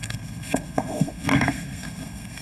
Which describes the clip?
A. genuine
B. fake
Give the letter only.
B